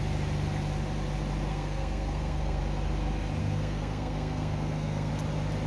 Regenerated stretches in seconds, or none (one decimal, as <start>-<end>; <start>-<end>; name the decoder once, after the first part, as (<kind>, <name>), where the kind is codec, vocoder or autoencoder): 1.5-2.6 (codec, SNAC); 3.4-5.1